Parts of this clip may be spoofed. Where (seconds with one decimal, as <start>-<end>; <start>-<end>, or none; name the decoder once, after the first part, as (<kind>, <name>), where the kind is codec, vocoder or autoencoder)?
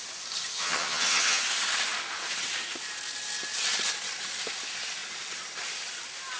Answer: 0.5-1.4 (vocoder, HiFi-GAN)